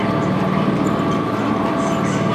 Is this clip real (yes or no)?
yes